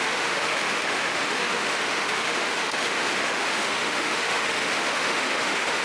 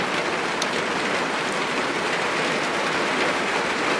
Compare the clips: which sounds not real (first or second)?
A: first